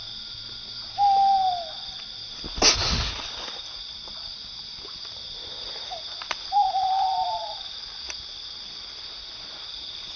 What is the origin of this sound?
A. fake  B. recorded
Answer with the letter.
B